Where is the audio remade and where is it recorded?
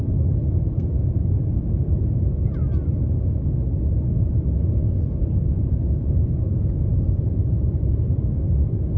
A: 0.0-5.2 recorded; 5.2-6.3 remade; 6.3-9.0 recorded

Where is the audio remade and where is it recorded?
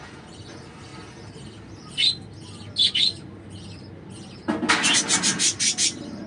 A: 0.0-0.9 remade; 0.9-4.7 recorded; 4.7-6.3 remade